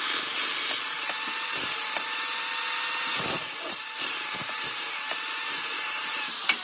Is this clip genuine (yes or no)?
no